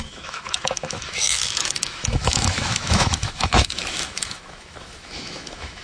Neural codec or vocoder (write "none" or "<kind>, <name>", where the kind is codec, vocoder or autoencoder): autoencoder, DAC-VAE